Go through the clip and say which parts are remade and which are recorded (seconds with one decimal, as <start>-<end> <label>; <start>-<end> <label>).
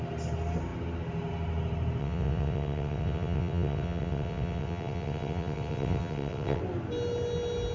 0.0-2.0 recorded; 2.0-6.6 remade; 6.6-7.7 recorded